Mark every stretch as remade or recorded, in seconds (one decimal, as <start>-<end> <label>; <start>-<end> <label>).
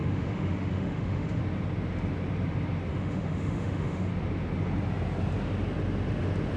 0.0-1.4 remade; 1.4-2.9 recorded; 2.9-4.1 remade; 4.1-6.6 recorded